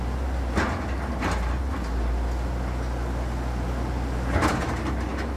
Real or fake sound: real